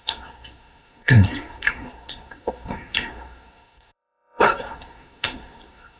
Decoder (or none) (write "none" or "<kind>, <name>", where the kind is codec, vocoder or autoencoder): codec, SNAC